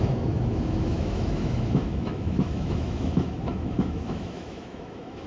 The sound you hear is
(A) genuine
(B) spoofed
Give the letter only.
B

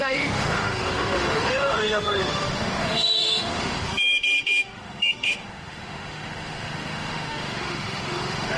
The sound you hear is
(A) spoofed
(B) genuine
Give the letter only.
A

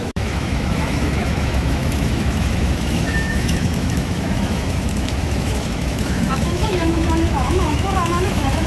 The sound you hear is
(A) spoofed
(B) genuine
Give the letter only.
A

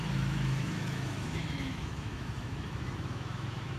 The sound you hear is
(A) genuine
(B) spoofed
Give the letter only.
B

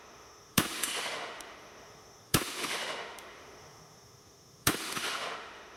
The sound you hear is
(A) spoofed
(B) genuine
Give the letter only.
A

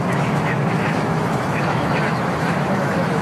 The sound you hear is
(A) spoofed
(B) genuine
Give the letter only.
A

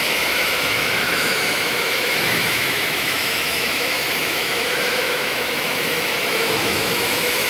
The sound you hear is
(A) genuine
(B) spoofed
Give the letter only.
B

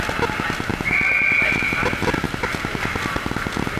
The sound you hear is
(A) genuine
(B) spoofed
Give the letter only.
A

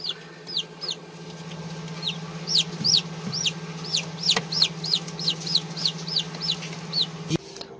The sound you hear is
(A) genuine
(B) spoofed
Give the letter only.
A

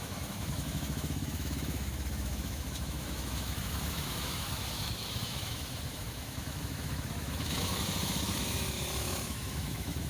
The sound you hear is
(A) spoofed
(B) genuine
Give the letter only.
A